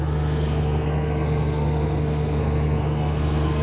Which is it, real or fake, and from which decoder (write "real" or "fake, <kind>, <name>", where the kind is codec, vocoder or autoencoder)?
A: fake, codec, SNAC